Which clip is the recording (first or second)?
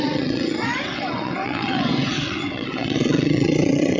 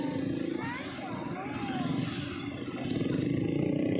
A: second